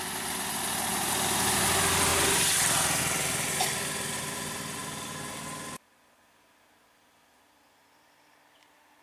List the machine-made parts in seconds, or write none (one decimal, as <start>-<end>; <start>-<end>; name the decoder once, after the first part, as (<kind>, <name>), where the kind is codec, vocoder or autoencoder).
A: 0.9-1.7 (vocoder, BigVGAN v2); 2.1-3.0